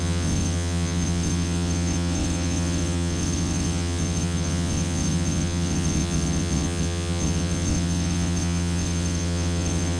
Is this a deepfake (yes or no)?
yes